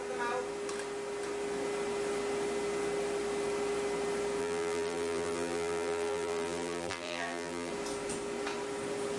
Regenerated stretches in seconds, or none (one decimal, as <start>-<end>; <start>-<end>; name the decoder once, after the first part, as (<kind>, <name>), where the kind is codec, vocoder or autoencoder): 4.4-7.7 (vocoder, BigVGAN v2)